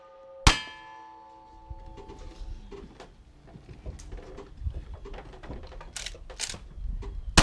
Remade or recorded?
recorded